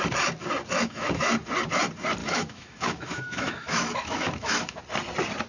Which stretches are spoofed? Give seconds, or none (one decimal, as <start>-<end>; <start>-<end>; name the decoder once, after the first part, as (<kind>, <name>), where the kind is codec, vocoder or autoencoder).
0.8-1.3 (autoencoder, DAC-VAE); 2.2-4.8